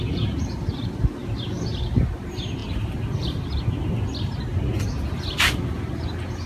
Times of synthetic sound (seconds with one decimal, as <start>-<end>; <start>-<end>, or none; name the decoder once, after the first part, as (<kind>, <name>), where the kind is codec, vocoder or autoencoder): none